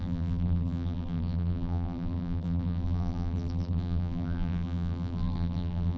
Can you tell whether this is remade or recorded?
remade